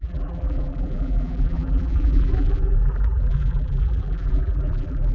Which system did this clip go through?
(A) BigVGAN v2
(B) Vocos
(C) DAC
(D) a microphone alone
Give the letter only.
A